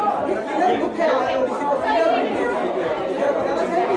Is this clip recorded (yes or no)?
no